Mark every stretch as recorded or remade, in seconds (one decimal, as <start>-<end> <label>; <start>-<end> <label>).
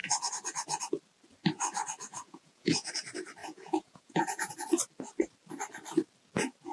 0.0-2.1 recorded; 2.1-2.9 remade; 2.9-3.4 recorded; 3.4-4.5 remade; 4.5-6.7 recorded